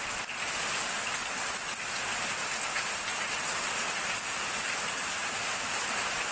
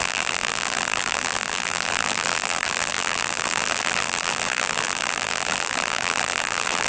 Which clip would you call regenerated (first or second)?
second